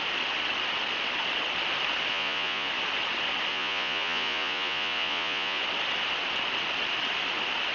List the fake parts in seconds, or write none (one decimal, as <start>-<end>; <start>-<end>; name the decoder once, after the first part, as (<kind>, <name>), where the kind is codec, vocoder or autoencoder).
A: 2.1-2.7 (vocoder, Vocos); 3.5-5.6